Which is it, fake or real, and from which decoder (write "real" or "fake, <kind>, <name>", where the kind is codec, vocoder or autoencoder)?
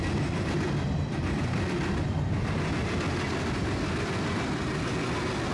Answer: real